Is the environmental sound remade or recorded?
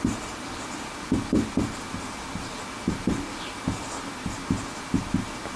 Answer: recorded